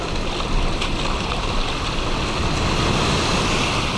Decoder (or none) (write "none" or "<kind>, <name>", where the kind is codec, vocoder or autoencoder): none